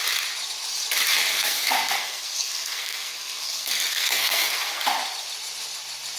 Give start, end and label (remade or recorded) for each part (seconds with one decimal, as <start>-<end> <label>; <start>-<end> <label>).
0.0-1.3 recorded; 1.3-4.8 remade; 4.8-6.2 recorded